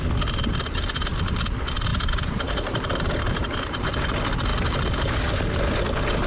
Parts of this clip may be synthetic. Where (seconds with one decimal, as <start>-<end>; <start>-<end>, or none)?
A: 1.9-3.9